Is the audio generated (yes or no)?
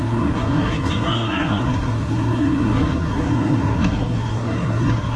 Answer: yes